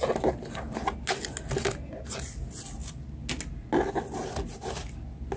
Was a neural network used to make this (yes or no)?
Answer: no